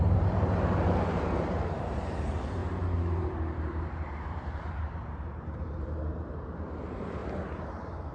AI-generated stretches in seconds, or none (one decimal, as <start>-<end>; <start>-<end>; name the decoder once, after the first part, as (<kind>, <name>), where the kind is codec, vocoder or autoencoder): 0.0-7.2 (vocoder, BigVGAN v2)